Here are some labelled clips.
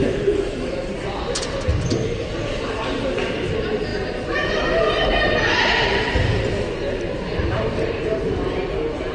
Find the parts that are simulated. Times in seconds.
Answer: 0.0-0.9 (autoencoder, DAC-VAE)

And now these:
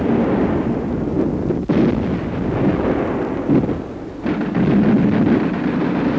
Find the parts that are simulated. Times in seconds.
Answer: none

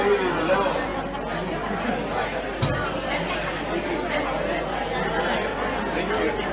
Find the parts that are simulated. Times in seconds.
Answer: none

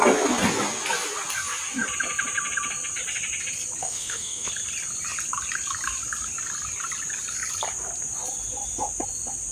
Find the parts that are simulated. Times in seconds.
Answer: 3.8-4.5 (autoencoder, DAC-VAE)

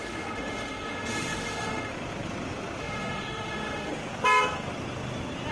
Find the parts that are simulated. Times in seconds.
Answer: 0.0-1.9 (autoencoder, DAC-VAE); 2.8-3.9

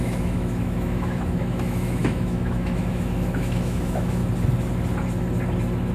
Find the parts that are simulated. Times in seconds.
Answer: 0.0-4.2 (autoencoder, DAC-VAE)

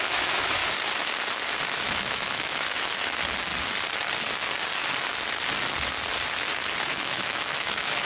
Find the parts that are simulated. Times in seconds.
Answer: 0.0-0.6 (autoencoder, DAC-VAE); 1.8-3.5; 6.8-8.0

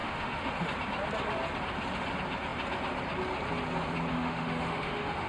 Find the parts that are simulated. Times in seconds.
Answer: 0.0-0.5 (autoencoder, DAC-VAE); 4.1-5.3